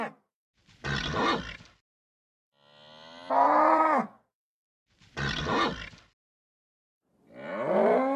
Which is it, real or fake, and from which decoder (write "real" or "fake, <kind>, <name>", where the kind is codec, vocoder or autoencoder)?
real